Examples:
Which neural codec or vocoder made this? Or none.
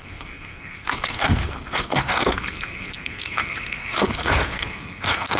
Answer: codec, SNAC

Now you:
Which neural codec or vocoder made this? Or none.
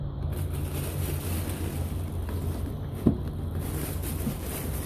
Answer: none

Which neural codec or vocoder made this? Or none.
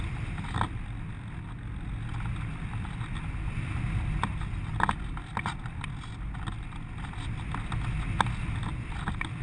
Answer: none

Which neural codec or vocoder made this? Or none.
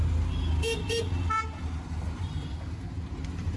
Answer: none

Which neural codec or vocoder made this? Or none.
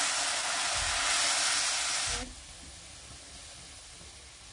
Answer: none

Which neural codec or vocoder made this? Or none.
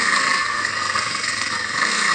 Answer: codec, SNAC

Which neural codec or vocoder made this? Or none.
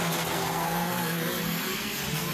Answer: codec, SNAC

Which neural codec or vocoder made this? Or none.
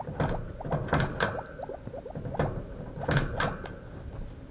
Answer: none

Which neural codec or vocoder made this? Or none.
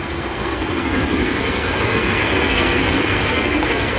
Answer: codec, SNAC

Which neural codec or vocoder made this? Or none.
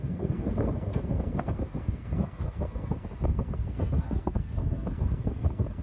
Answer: codec, SNAC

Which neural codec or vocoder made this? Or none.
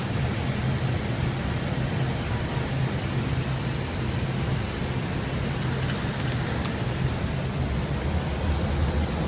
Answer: none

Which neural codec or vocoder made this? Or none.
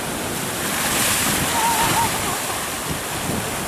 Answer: none